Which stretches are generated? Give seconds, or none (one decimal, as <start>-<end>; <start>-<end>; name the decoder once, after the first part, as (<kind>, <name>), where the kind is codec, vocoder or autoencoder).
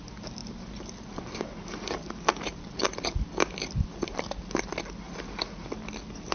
none